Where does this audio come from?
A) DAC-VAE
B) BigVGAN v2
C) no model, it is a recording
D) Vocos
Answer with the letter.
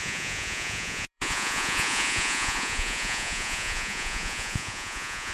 D